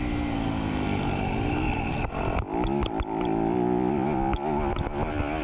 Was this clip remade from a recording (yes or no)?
no